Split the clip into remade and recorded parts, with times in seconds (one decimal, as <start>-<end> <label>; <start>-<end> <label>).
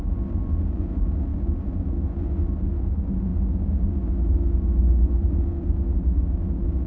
0.0-6.9 recorded